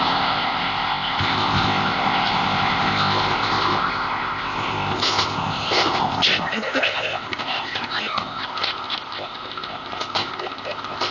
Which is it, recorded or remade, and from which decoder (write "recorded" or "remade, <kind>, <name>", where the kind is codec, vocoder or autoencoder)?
remade, codec, ZipCodec